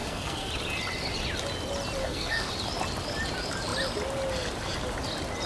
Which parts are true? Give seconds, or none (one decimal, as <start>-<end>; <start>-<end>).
0.5-2.0; 2.5-5.5